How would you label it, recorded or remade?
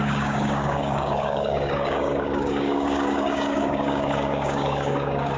remade